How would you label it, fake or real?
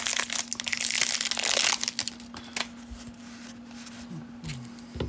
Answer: real